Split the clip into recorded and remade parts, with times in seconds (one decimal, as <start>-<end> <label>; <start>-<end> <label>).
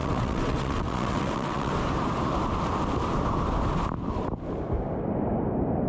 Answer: 0.0-1.7 remade; 1.7-5.9 recorded